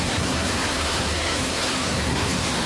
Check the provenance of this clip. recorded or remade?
remade